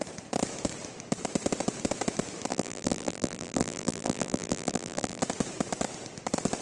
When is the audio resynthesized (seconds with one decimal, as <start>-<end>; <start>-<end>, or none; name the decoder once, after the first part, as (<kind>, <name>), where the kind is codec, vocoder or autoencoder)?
2.5-5.2 (vocoder, BigVGAN v2)

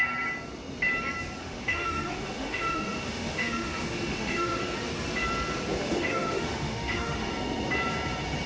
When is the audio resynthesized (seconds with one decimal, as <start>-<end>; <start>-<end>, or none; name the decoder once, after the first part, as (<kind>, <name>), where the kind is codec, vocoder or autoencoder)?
1.4-4.6 (autoencoder, DAC-VAE); 5.8-7.3